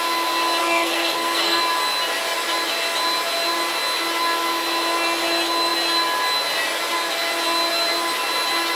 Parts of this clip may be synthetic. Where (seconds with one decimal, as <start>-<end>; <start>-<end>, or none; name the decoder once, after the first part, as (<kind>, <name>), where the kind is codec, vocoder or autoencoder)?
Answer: 0.6-1.6 (codec, SNAC)